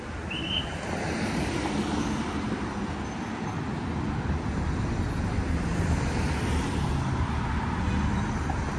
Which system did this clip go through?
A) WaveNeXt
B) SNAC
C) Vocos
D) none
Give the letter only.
D